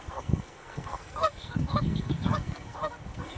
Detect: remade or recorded remade